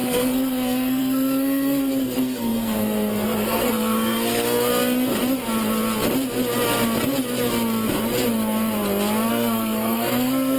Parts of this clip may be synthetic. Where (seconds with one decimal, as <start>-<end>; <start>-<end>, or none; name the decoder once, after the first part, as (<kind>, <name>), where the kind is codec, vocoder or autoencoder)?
0.0-4.7 (codec, SNAC); 9.3-10.6